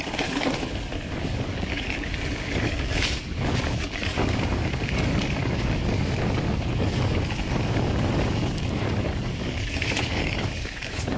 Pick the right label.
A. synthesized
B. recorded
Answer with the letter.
A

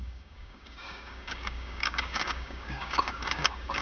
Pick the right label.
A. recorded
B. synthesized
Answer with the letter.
B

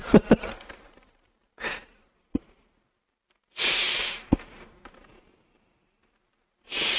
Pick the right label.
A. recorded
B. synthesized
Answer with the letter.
A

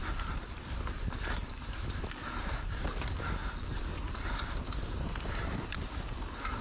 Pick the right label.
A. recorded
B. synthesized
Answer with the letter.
A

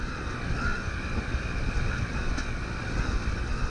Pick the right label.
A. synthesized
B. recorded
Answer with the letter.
B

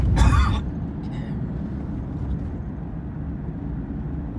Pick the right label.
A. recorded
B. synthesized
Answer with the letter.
A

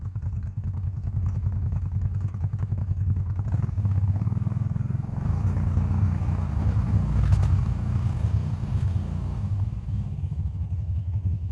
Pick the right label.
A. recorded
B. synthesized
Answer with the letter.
B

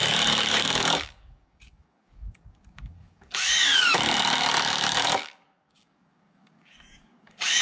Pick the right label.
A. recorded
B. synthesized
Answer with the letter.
B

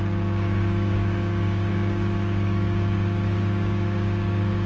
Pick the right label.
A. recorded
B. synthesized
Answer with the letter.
B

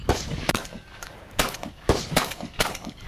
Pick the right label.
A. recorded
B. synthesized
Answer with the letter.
B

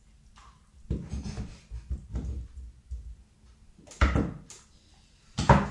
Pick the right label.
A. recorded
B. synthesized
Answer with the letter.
A